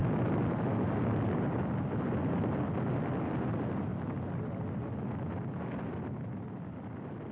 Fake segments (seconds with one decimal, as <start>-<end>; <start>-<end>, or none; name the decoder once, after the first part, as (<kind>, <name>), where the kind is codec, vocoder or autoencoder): none